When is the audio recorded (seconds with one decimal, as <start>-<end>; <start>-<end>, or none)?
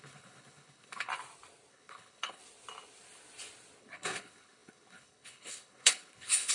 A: 1.1-1.7; 2.4-3.8